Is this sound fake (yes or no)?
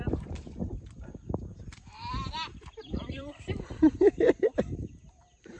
yes